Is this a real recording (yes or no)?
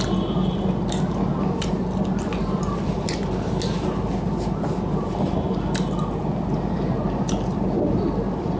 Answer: yes